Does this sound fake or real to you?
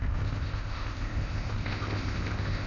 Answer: fake